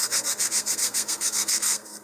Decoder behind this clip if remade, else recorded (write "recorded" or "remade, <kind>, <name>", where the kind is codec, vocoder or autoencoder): remade, codec, SNAC